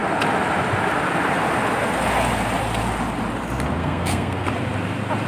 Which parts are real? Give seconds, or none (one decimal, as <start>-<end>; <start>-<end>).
0.0-3.8; 4.5-5.3